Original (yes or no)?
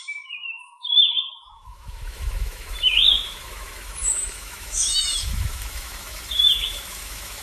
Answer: no